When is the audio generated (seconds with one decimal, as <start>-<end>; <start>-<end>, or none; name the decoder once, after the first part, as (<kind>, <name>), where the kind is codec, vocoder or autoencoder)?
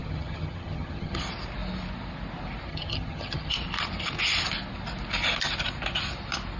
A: 0.0-1.2 (vocoder, HiFi-GAN); 2.7-3.5